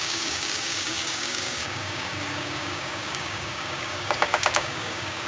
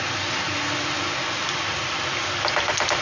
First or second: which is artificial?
first